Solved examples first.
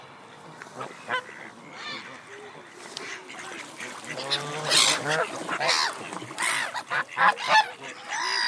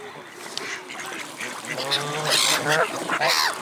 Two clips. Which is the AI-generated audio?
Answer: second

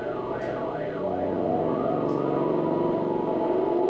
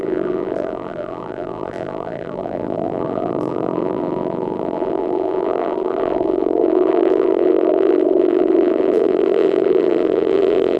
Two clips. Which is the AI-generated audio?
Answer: second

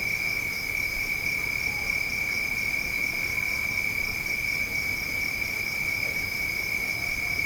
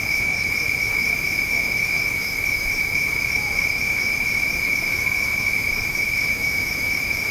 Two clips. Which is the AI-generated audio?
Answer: second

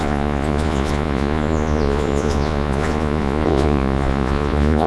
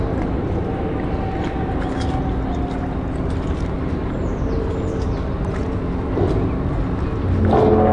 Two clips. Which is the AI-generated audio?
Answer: first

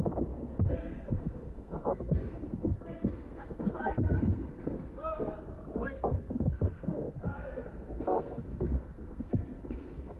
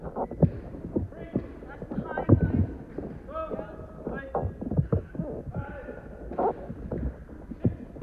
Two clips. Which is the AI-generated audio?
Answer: first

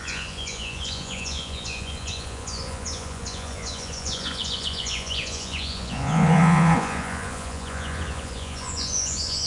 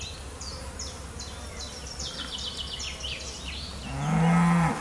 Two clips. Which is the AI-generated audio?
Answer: first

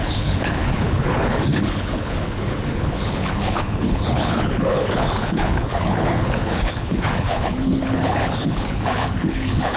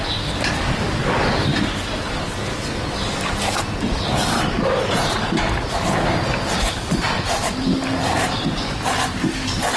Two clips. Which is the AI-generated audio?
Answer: first